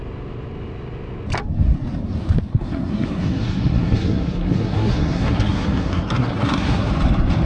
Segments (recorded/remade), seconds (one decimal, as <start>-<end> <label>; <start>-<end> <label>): 0.0-2.5 recorded; 2.5-6.9 remade; 6.9-7.4 recorded

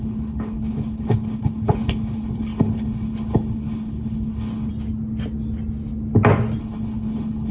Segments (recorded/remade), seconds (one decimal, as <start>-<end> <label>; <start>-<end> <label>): 0.0-4.7 remade; 4.7-6.6 recorded; 6.6-7.5 remade

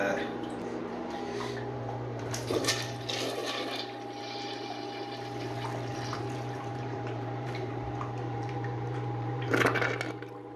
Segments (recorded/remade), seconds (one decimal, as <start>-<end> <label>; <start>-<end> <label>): 0.0-2.7 remade; 2.7-5.9 recorded; 5.9-9.5 remade; 9.5-10.6 recorded

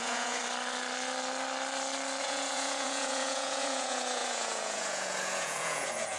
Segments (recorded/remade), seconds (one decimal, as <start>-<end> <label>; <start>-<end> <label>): 0.0-0.4 remade; 0.4-2.2 recorded; 2.2-6.2 remade